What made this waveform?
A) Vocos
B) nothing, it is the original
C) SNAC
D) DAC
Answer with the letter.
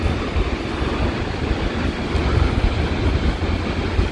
B